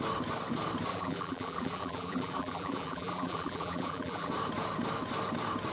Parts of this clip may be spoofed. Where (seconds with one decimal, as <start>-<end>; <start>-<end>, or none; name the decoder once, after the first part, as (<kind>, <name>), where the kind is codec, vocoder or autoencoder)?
0.9-4.3 (vocoder, BigVGAN v2)